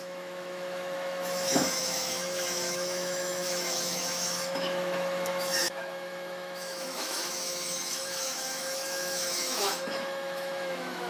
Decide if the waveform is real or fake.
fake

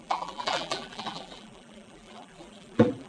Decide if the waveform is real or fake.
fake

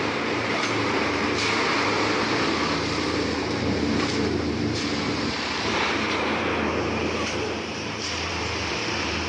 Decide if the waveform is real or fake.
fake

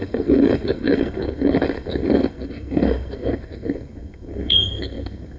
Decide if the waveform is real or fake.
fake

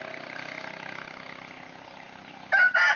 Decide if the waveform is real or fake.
real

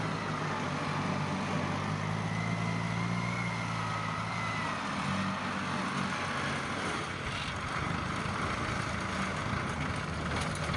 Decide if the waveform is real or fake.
real